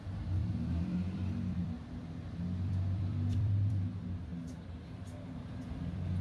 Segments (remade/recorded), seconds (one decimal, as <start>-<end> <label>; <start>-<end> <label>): 0.0-6.2 remade